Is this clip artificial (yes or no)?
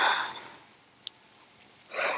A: no